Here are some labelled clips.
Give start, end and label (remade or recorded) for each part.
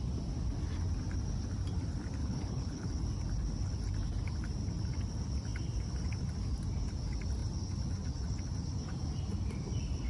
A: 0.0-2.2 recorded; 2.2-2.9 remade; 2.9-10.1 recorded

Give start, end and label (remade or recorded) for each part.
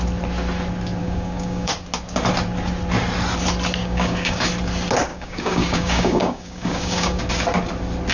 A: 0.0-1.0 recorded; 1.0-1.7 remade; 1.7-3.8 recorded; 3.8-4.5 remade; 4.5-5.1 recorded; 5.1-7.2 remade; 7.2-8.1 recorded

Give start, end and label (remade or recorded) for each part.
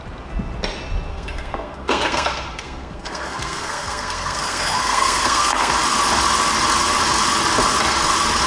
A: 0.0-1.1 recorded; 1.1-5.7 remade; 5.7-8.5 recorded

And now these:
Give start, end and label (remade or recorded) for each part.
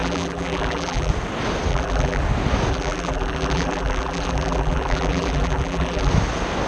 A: 0.0-1.1 remade; 1.1-1.7 recorded; 1.7-2.2 remade; 2.2-2.7 recorded; 2.7-6.1 remade; 6.1-6.7 recorded